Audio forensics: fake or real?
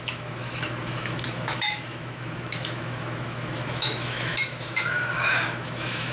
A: fake